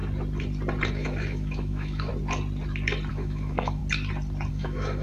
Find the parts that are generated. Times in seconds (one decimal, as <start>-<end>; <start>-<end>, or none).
0.9-2.1; 3.1-3.8; 4.5-5.0